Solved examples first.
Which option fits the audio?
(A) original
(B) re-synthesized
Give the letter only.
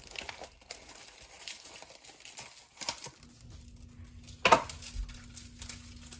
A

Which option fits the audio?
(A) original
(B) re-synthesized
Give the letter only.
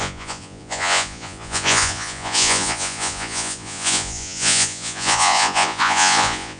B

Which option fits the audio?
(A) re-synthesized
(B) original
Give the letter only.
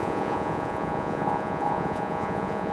A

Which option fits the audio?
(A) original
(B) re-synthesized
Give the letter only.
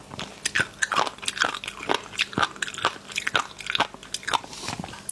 A